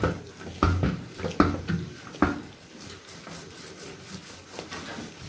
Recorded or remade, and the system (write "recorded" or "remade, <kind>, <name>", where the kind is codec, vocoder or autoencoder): recorded